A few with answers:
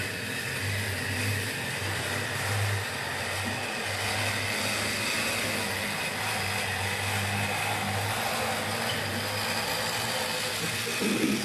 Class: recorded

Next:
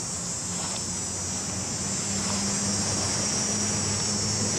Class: recorded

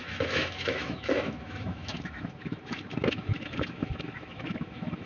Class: remade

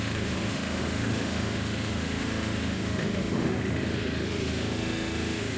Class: remade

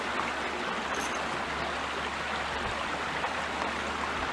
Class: recorded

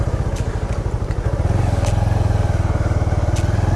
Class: recorded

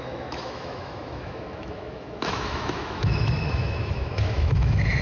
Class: remade